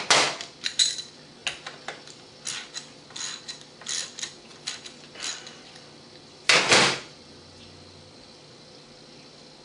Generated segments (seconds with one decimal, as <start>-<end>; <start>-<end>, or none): none

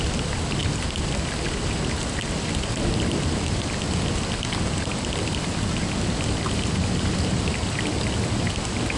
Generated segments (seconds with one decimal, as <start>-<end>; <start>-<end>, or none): none

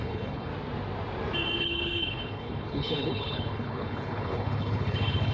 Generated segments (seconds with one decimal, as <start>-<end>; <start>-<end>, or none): 0.0-0.5; 1.6-5.3

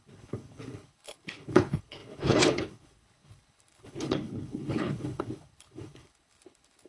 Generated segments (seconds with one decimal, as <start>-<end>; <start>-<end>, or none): 0.0-6.9

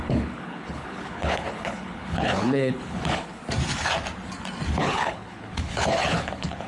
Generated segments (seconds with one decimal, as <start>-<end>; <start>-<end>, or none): 0.0-3.4; 4.8-6.7

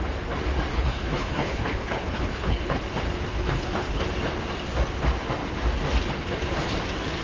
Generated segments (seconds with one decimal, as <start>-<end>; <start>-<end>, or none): 0.7-2.8; 3.3-4.0

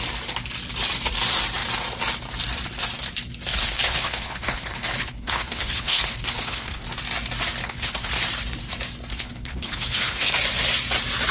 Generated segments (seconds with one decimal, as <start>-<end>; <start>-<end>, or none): 3.5-6.8; 7.6-8.1; 9.1-10.3

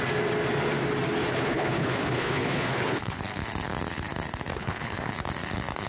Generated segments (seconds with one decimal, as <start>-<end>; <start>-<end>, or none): 1.2-3.2; 4.5-5.1